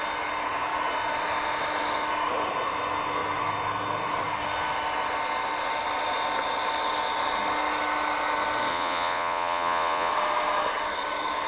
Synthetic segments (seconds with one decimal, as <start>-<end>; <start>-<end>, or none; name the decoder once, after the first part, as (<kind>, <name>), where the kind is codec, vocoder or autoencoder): 8.7-10.1 (vocoder, Vocos)